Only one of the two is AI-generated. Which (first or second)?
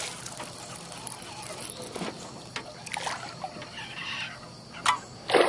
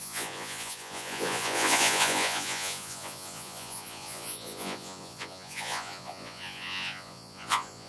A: second